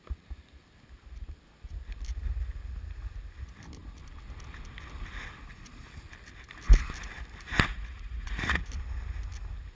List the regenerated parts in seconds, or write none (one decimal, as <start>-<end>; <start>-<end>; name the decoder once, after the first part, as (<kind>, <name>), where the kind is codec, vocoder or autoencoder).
7.7-8.7 (vocoder, Vocos)